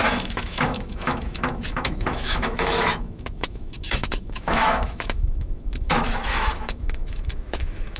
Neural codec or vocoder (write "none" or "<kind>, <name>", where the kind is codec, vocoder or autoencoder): autoencoder, DAC-VAE